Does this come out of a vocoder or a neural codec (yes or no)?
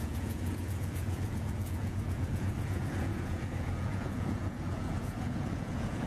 yes